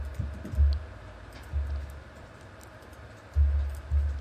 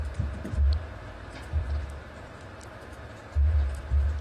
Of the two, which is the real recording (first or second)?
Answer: first